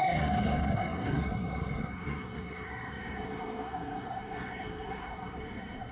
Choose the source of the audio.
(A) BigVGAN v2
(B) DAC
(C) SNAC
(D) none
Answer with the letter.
C